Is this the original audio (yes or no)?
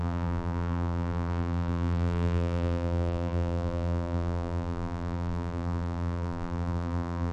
no